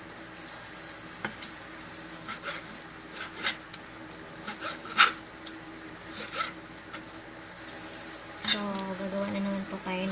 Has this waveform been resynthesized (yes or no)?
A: no